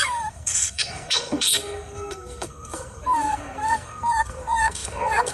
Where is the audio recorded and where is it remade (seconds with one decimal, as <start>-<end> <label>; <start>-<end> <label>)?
0.0-5.3 remade